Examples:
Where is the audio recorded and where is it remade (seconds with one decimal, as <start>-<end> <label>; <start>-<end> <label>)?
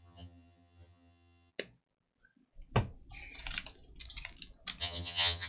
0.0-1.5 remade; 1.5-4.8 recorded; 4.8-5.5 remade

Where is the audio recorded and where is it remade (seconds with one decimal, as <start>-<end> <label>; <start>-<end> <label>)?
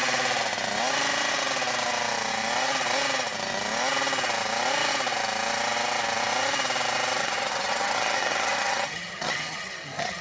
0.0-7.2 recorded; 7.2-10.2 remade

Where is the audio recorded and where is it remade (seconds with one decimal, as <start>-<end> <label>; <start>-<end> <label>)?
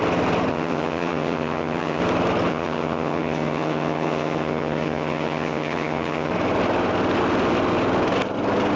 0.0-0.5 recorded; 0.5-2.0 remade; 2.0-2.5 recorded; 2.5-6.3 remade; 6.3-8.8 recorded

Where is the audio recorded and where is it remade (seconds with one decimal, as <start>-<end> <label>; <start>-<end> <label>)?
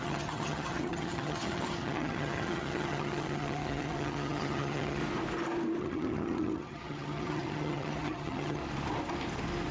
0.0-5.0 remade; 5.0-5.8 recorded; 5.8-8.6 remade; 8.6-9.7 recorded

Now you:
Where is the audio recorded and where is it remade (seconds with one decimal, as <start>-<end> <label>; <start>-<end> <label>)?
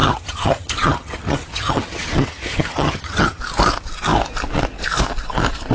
0.0-3.4 remade; 3.4-5.7 recorded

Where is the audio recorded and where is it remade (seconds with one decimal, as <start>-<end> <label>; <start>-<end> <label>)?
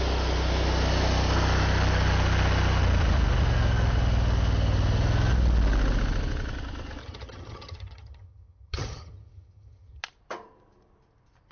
0.0-7.0 recorded; 7.0-10.0 remade; 10.0-11.5 recorded